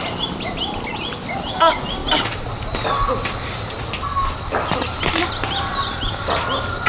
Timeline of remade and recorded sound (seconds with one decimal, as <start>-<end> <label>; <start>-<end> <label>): 0.0-6.9 recorded